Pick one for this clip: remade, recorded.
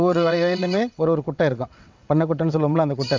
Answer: remade